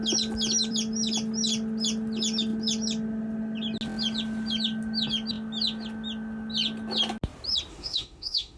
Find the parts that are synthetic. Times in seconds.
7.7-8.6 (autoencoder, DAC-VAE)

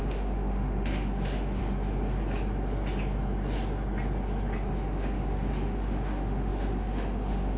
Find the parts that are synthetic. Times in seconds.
0.0-1.6 (autoencoder, DAC-VAE); 4.7-7.6

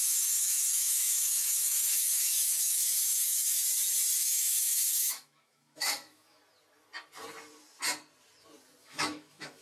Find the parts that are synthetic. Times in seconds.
0.0-3.6 (autoencoder, DAC-VAE); 4.2-6.4; 8.8-9.6